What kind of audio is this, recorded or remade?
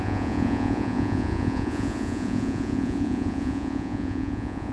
remade